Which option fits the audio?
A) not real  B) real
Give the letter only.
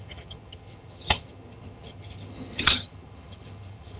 A